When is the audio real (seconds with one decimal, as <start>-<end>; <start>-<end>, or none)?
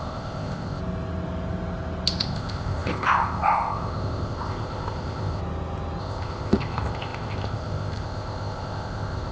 0.8-2.2; 5.4-6.0